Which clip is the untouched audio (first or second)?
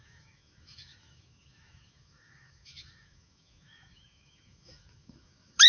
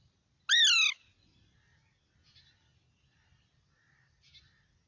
second